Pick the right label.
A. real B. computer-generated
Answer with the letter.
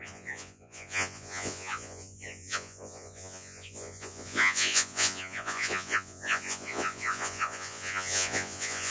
B